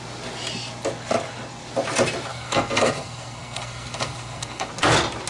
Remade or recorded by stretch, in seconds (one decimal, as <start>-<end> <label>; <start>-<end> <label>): 0.0-2.3 recorded; 2.3-4.7 remade; 4.7-5.3 recorded